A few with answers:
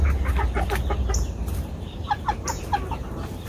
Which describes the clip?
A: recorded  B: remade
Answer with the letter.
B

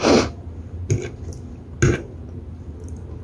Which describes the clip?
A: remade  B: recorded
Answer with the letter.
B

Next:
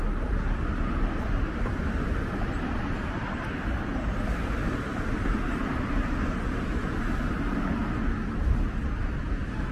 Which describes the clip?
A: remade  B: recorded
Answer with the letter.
B